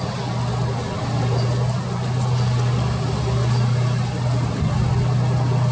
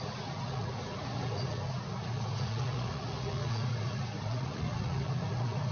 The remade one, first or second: second